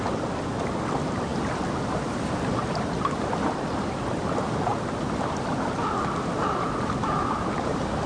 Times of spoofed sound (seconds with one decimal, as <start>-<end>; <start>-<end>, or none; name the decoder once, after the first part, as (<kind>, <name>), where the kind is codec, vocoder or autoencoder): none